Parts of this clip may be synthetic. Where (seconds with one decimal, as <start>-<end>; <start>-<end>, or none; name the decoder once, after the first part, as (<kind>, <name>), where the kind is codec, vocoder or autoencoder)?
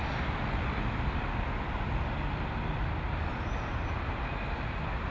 none